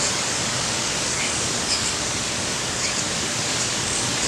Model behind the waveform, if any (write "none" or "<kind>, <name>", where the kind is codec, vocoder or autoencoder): codec, DAC